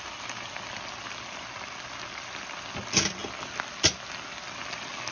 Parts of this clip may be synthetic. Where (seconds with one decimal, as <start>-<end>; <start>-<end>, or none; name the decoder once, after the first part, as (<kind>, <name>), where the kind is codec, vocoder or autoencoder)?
none